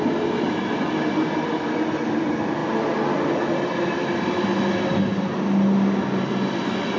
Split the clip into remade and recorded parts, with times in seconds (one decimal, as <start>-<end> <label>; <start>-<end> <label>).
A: 0.0-7.0 recorded